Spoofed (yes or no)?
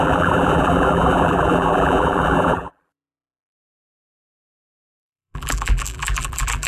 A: yes